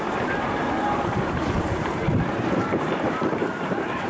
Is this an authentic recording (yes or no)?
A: no